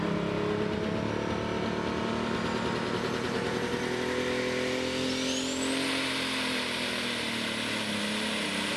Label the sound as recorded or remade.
recorded